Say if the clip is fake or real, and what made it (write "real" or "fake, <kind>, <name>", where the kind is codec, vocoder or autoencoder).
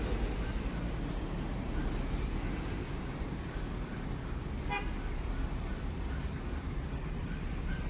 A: real